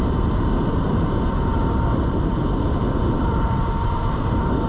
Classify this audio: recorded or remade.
remade